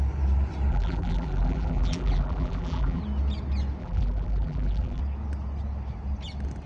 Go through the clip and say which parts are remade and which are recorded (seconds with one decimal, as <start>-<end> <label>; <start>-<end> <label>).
0.0-0.7 recorded; 0.7-3.0 remade; 3.0-3.8 recorded; 3.8-5.0 remade; 5.0-6.7 recorded